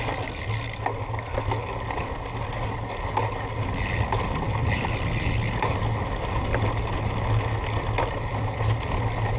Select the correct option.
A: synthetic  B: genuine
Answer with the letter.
B